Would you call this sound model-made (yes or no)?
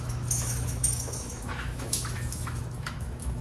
yes